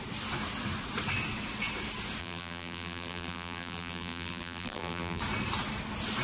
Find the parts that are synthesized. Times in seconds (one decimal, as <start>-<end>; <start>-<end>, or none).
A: 2.2-5.2